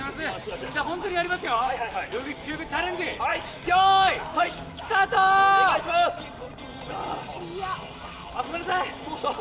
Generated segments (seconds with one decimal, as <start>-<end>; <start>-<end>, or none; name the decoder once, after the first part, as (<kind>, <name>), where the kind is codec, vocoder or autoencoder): 0.4-2.5 (codec, DAC); 3.3-4.9